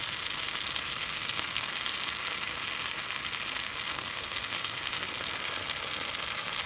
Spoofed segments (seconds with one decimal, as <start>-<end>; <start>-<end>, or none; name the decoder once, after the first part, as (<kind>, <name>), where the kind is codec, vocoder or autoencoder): 0.9-1.7 (codec, SNAC); 3.9-4.8